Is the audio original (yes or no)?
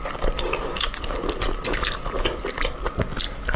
yes